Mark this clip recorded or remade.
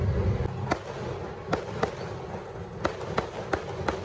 recorded